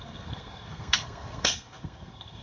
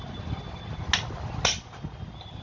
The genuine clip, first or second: second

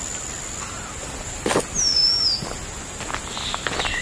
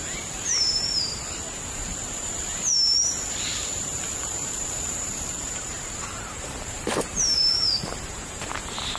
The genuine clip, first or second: first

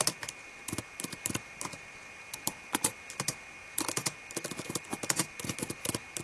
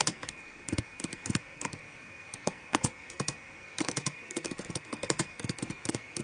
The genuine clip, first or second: first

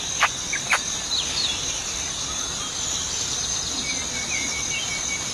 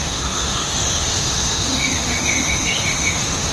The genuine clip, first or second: first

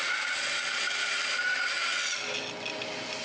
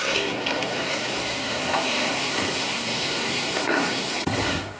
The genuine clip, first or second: first